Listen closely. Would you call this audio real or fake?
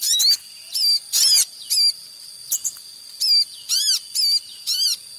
real